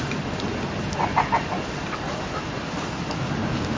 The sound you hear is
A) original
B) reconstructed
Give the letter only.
A